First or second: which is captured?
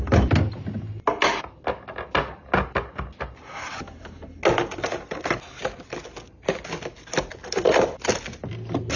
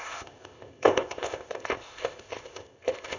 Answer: first